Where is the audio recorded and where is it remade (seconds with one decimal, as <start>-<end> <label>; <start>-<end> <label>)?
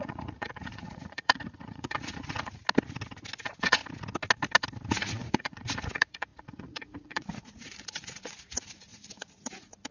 0.0-2.6 remade; 2.6-3.4 recorded; 3.4-3.8 remade; 3.8-4.9 recorded; 4.9-9.9 remade